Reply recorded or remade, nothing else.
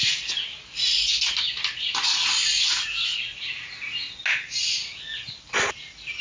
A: recorded